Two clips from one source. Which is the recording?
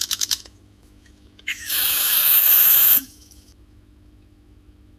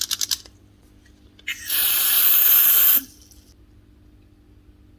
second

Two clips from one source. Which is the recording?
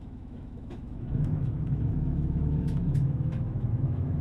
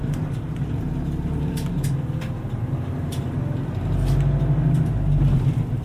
second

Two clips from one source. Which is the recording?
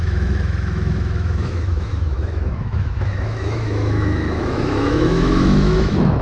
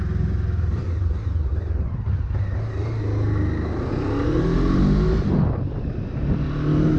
second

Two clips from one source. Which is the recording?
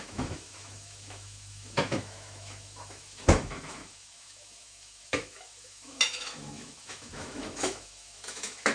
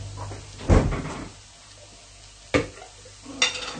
second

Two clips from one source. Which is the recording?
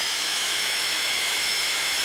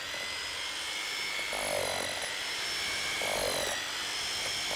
second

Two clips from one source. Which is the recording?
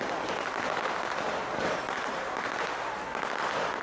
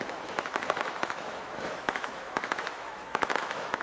first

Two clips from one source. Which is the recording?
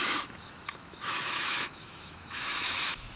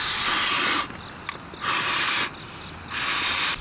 second